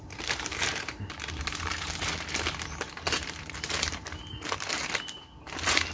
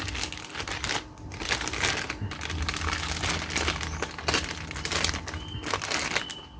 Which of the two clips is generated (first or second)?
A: first